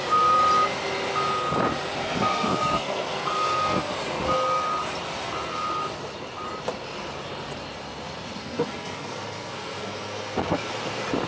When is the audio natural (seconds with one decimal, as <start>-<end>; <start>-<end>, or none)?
0.0-2.0; 3.9-8.4; 10.7-11.3

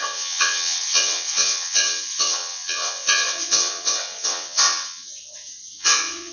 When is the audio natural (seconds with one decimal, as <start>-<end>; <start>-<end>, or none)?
none